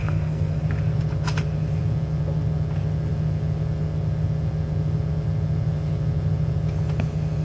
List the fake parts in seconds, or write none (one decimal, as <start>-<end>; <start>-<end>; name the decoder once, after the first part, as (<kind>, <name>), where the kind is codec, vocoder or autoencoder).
0.0-0.6 (codec, SNAC)